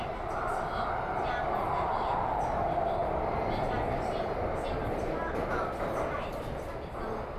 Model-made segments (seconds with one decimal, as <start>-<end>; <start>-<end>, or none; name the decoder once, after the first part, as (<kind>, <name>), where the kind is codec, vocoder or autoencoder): none